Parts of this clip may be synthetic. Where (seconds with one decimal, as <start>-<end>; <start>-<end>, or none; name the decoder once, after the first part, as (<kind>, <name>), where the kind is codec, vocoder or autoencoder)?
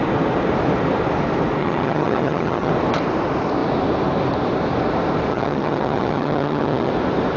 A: 1.6-2.7 (vocoder, HiFi-GAN); 5.3-6.9